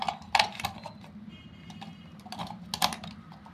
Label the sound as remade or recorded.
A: recorded